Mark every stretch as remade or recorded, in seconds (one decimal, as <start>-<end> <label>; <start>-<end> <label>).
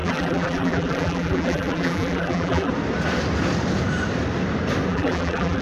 0.0-2.7 remade; 2.7-4.9 recorded; 4.9-5.6 remade